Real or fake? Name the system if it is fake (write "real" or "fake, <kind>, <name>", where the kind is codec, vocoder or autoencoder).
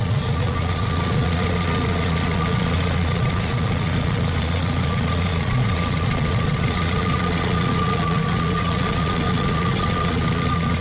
fake, vocoder, Vocos